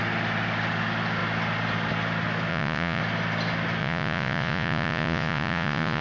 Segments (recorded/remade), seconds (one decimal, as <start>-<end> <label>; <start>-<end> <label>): 0.0-2.5 recorded; 2.5-3.0 remade; 3.0-3.8 recorded; 3.8-6.0 remade